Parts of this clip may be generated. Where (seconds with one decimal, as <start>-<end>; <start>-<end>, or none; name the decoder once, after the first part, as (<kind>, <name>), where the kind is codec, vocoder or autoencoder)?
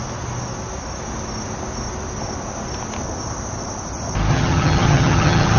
4.3-5.6 (vocoder, HiFi-GAN)